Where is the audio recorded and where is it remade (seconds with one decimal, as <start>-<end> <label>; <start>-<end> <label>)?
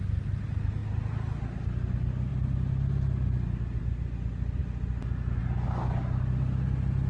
0.0-7.1 recorded